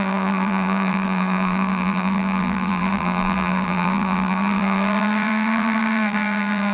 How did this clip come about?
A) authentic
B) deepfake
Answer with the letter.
B